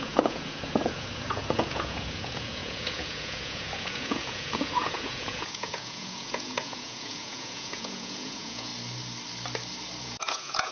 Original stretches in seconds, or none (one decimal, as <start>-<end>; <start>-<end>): 8.7-10.0